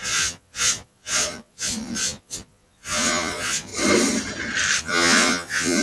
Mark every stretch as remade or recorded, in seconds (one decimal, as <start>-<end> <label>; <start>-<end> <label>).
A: 0.0-3.7 remade; 3.7-4.8 recorded; 4.8-5.8 remade